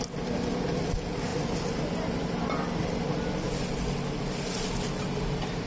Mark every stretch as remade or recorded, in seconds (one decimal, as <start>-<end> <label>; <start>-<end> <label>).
0.0-5.7 recorded